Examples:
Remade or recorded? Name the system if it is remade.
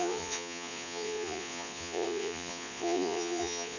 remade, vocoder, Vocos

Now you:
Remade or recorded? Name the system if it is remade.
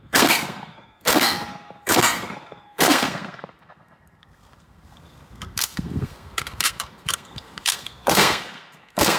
remade, codec, SNAC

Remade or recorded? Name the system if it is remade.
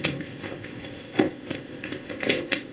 remade, codec, ZipCodec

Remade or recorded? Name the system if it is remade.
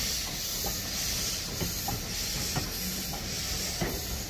recorded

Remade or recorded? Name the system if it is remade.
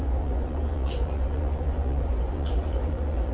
remade, vocoder, Vocos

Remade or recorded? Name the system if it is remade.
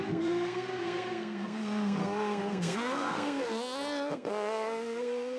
remade, codec, SNAC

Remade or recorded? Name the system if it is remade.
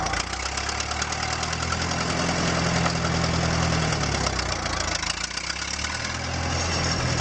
recorded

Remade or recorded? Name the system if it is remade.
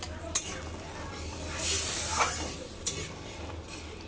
recorded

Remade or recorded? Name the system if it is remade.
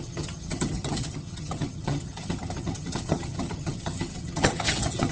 remade, vocoder, HiFi-GAN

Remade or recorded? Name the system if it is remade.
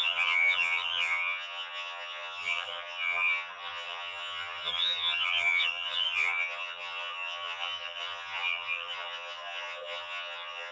remade, vocoder, HiFi-GAN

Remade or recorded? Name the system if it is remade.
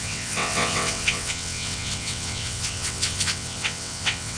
remade, vocoder, WaveNeXt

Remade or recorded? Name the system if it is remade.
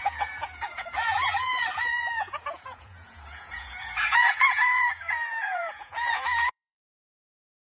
remade, vocoder, Vocos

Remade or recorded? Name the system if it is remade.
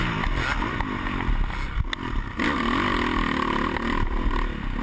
recorded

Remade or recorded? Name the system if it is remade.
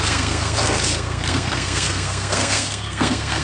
remade, codec, SNAC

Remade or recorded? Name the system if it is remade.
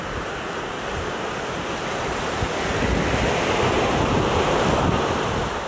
recorded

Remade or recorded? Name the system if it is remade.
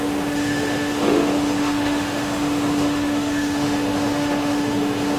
remade, autoencoder, DAC-VAE